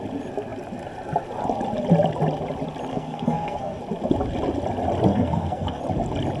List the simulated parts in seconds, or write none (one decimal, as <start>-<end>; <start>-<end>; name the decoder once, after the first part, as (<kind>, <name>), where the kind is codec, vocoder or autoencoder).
2.9-3.8 (codec, SNAC); 5.1-5.8